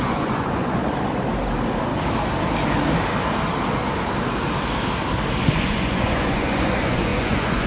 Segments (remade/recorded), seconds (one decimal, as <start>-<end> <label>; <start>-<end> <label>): 0.0-0.8 remade; 0.8-5.4 recorded; 5.4-7.7 remade